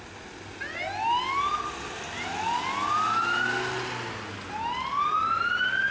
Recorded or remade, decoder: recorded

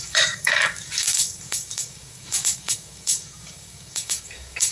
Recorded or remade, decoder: remade, codec, DAC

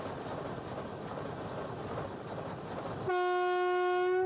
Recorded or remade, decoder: recorded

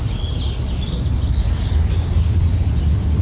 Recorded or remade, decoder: recorded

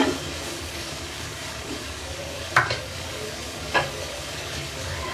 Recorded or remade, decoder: remade, codec, DAC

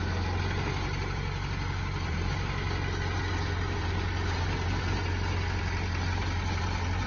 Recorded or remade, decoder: recorded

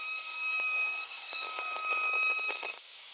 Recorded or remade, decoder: remade, codec, DAC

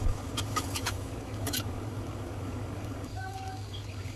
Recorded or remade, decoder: remade, codec, DAC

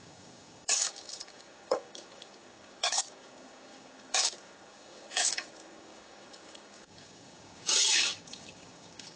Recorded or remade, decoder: remade, codec, DAC